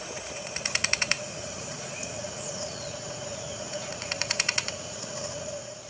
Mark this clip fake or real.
fake